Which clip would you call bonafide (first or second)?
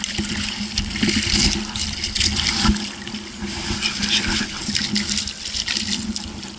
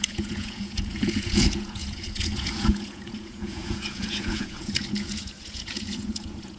first